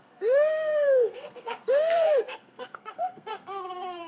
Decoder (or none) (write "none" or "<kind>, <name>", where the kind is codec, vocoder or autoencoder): codec, SNAC